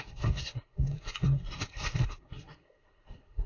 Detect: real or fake fake